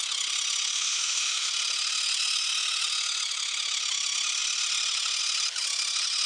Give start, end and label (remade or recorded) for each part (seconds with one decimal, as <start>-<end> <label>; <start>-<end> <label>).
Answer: 0.0-0.7 recorded; 0.7-1.5 remade; 1.5-6.3 recorded